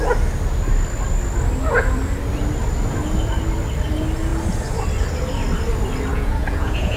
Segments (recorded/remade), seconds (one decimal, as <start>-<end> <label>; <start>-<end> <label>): 0.0-6.1 recorded; 6.1-7.0 remade